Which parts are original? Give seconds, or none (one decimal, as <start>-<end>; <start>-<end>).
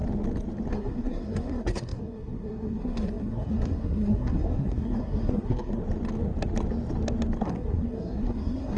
0.0-0.7; 5.8-7.4